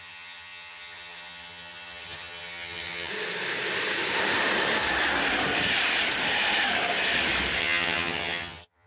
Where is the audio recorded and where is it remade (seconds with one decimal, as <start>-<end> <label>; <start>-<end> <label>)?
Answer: 0.0-3.1 remade; 3.1-7.6 recorded; 7.6-8.9 remade